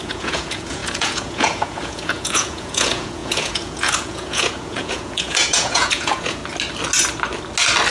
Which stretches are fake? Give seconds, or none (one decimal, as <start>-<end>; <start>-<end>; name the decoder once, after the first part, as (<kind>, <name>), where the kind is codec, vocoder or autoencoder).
0.0-6.4 (vocoder, Vocos)